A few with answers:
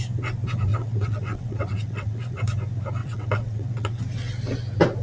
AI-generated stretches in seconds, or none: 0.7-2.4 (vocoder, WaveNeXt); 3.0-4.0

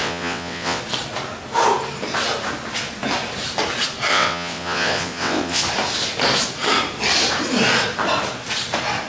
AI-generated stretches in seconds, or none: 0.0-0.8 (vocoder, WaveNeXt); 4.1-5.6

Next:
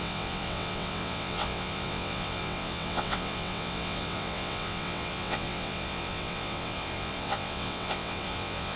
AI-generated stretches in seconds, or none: 0.0-8.8 (vocoder, WaveNeXt)

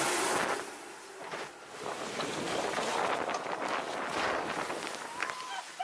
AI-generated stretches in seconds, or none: none

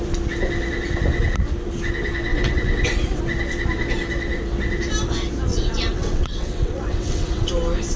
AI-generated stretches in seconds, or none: 2.3-3.2 (vocoder, WaveNeXt); 5.5-7.5

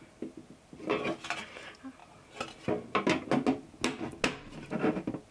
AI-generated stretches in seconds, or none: none

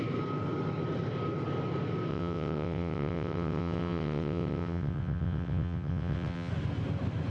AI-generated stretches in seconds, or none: 2.1-6.5 (vocoder, WaveNeXt)